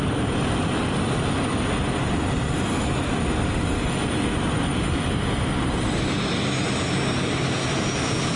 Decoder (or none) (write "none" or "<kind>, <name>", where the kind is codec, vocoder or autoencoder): none